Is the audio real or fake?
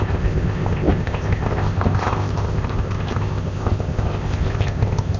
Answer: fake